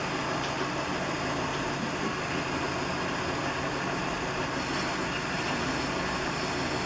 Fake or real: real